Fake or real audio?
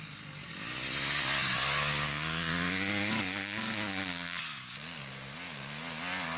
real